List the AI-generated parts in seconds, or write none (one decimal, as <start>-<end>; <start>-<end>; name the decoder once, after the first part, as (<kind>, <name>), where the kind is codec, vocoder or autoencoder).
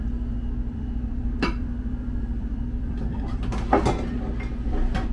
0.7-3.8 (vocoder, BigVGAN v2)